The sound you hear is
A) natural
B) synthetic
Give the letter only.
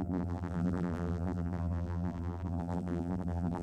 B